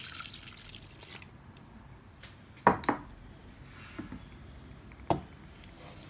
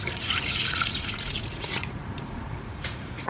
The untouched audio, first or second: first